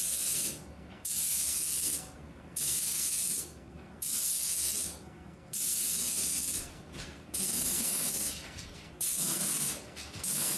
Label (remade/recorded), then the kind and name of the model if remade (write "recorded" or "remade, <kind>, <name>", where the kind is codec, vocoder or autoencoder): remade, codec, SNAC